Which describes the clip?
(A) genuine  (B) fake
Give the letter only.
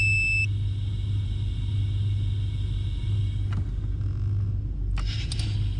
A